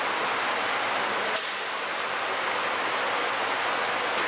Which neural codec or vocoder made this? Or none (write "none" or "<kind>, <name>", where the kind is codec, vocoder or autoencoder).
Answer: none